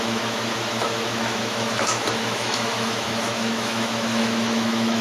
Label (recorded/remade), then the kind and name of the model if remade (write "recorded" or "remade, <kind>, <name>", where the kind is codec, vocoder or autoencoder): remade, autoencoder, DAC-VAE